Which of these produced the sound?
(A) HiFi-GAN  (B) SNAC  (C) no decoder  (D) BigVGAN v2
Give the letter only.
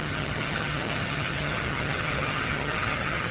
A